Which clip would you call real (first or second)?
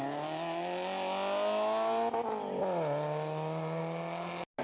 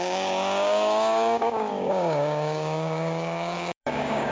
first